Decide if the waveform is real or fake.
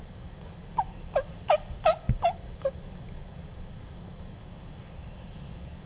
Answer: fake